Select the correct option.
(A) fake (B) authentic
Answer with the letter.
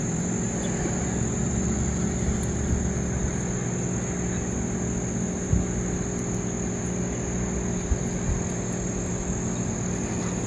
B